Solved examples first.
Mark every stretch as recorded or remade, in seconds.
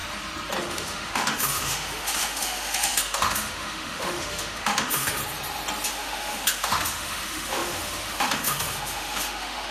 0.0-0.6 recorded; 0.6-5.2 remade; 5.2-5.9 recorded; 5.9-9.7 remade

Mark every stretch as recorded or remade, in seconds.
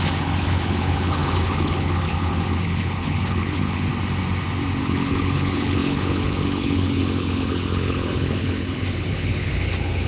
0.0-3.9 remade; 3.9-4.8 recorded; 4.8-10.1 remade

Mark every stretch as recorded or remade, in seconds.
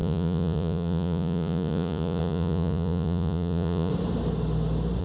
0.0-3.9 remade; 3.9-5.0 recorded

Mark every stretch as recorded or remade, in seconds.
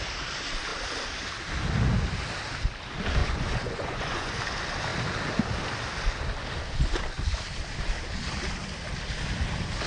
0.0-3.2 recorded; 3.2-4.4 remade; 4.4-9.9 recorded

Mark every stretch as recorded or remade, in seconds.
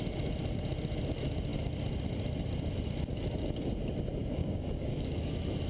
0.0-4.4 recorded; 4.4-5.3 remade; 5.3-5.7 recorded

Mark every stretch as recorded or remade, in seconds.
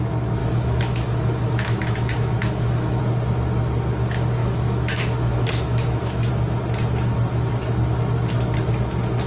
0.0-0.4 recorded; 0.4-3.0 remade; 3.0-4.4 recorded; 4.4-6.3 remade; 6.3-9.3 recorded